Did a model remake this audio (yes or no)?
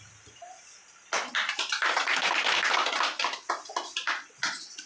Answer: no